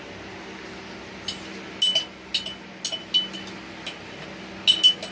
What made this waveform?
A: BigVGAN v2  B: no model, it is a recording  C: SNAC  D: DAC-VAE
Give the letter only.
B